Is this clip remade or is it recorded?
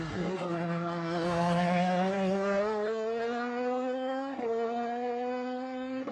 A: remade